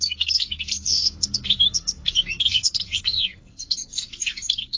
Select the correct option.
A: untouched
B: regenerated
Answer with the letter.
B